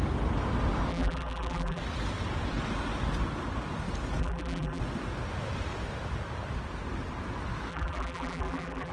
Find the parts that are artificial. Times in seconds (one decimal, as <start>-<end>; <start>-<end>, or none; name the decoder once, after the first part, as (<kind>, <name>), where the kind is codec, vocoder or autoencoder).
0.9-1.8 (vocoder, BigVGAN v2); 4.2-4.8; 7.7-8.9